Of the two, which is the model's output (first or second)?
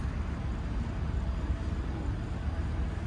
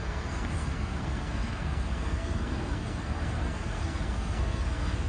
second